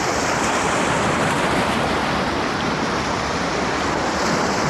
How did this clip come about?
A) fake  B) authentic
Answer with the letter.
B